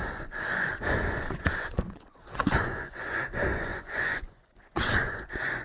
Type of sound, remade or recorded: remade